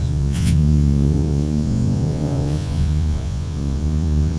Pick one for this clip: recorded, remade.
remade